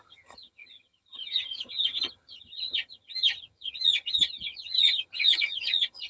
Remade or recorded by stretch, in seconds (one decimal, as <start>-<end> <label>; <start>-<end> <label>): 0.0-6.1 remade